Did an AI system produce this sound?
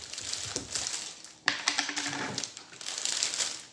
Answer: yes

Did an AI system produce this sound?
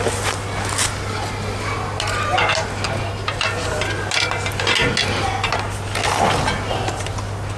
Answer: no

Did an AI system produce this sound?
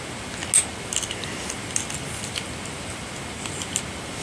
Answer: no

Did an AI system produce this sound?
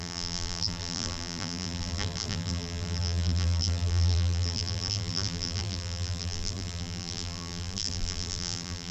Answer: yes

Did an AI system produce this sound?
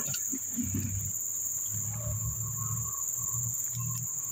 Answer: no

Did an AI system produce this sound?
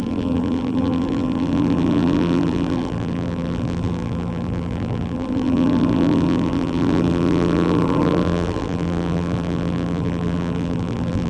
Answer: yes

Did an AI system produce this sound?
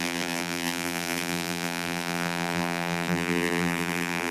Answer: yes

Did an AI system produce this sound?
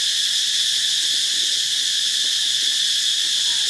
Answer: no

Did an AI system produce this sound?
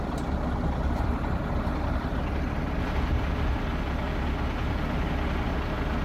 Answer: no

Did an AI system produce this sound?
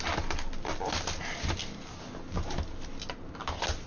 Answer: no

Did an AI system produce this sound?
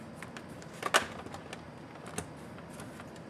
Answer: no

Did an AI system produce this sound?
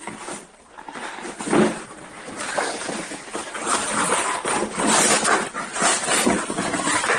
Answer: yes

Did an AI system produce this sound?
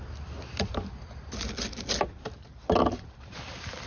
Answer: no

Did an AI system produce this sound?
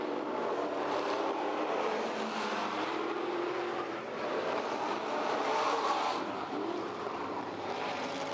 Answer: yes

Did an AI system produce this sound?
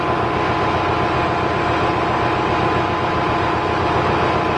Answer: no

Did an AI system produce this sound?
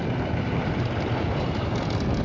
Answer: no